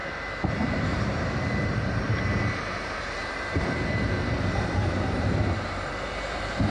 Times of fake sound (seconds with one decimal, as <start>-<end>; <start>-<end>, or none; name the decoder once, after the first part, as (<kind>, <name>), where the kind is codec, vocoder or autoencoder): 0.8-6.7 (vocoder, BigVGAN v2)